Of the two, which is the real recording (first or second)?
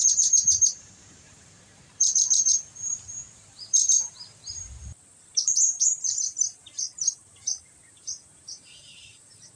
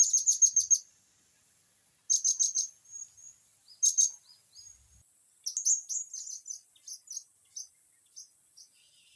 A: second